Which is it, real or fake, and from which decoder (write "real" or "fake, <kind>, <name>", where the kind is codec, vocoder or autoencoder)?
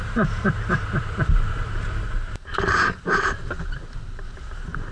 fake, vocoder, BigVGAN v2